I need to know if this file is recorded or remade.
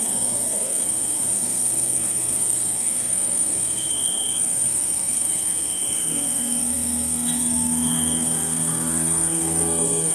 remade